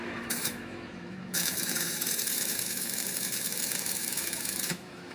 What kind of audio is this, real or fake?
fake